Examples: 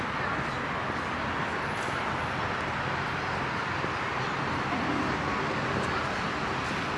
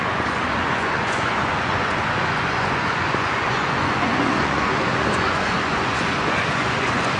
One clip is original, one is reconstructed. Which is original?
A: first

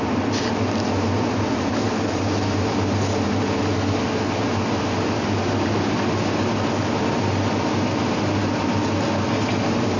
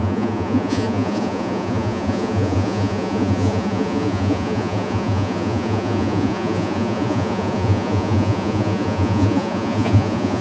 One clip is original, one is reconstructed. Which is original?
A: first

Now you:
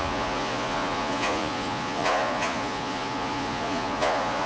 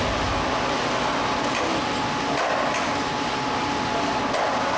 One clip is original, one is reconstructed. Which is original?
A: second